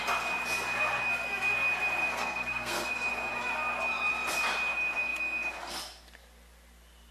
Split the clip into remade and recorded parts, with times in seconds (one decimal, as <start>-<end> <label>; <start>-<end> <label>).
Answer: 0.0-2.0 recorded; 2.0-2.9 remade; 2.9-7.1 recorded